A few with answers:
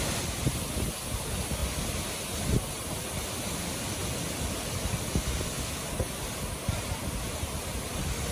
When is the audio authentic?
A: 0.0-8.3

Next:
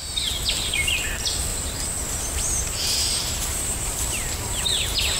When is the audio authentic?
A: 0.0-1.5; 4.6-5.2

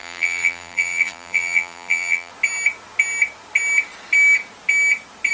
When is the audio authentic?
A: 2.3-5.3

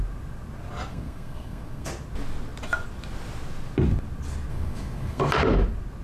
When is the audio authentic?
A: 0.0-0.9; 1.9-4.5; 5.2-6.0